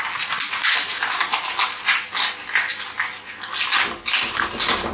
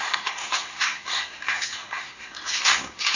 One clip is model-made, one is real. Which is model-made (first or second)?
second